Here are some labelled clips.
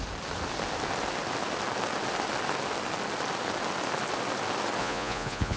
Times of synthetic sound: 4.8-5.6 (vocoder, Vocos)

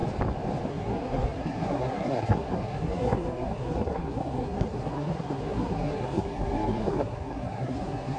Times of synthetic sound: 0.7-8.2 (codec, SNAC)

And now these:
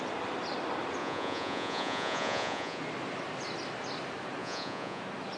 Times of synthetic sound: 1.0-2.8 (vocoder, Vocos); 4.4-5.0

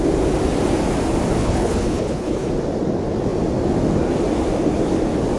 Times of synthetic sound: 1.4-2.5 (codec, HILCodec)

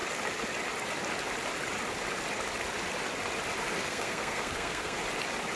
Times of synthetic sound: 3.8-5.0 (codec, SNAC)

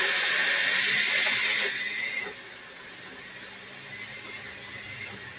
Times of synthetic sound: none

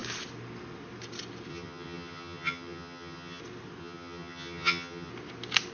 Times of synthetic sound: 1.5-3.4 (vocoder, HiFi-GAN); 3.8-5.1